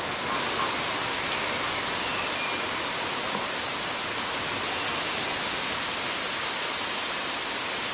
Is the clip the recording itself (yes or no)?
yes